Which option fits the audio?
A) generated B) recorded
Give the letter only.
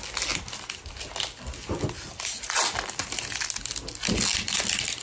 B